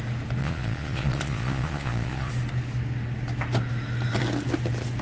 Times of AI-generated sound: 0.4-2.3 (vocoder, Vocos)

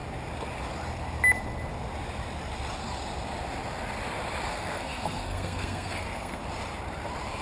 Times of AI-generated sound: 4.5-6.4 (codec, SNAC)

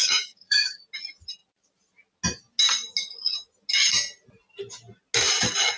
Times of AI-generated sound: 0.0-0.8 (codec, DAC)

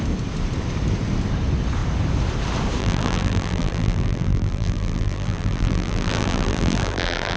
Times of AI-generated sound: 2.8-7.4 (vocoder, BigVGAN v2)

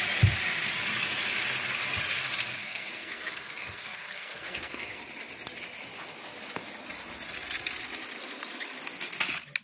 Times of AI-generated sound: 2.6-5.0 (codec, SNAC)

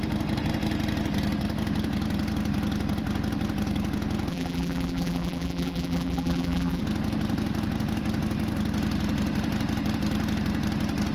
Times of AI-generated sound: 4.3-6.8 (vocoder, BigVGAN v2)

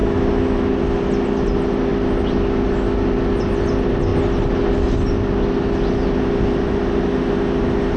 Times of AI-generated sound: none